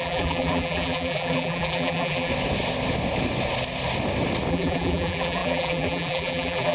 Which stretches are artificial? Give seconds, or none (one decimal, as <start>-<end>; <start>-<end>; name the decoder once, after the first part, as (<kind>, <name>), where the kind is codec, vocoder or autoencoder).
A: 0.0-2.3 (vocoder, BigVGAN v2); 4.5-6.7